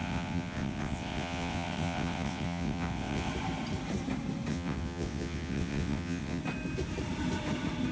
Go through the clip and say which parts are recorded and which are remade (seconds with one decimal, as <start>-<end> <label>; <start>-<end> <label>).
0.0-3.3 remade; 3.3-4.5 recorded; 4.5-6.4 remade; 6.4-7.9 recorded